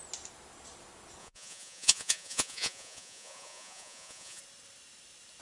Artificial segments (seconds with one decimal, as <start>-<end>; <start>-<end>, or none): 1.2-4.4